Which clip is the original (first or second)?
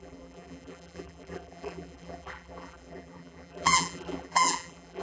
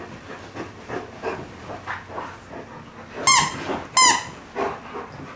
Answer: second